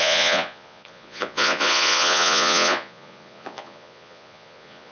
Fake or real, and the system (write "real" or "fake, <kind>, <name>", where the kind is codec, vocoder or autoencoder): fake, vocoder, Vocos